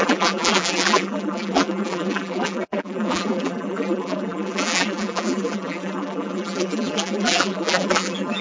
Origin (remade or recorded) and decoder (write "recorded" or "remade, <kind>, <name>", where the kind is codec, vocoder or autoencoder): remade, vocoder, BigVGAN v2